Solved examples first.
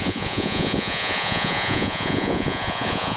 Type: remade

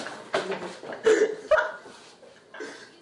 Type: recorded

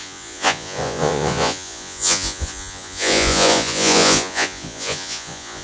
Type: remade